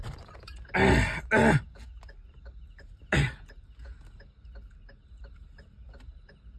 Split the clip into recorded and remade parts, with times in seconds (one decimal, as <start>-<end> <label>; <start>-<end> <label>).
0.0-6.6 recorded